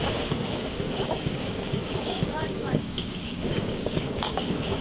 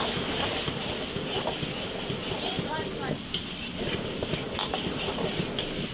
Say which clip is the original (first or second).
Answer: second